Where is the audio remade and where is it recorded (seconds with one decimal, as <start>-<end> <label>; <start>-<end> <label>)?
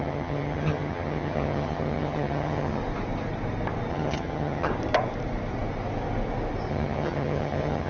0.0-2.8 remade; 2.8-3.9 recorded; 3.9-4.7 remade; 4.7-6.7 recorded; 6.7-7.9 remade